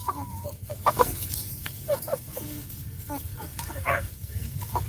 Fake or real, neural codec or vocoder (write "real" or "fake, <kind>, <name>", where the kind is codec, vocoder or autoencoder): fake, codec, SNAC